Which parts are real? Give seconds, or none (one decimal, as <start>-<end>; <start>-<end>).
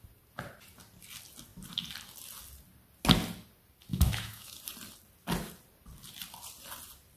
0.0-3.9; 4.6-7.2